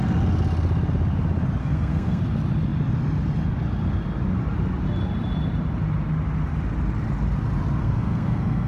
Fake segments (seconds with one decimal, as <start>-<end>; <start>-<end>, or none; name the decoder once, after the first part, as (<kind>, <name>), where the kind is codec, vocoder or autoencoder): 1.6-2.2 (codec, SNAC); 7.8-8.7